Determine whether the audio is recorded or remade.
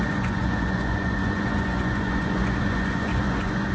remade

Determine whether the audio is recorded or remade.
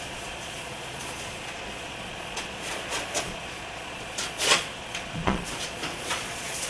remade